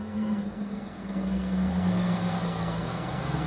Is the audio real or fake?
fake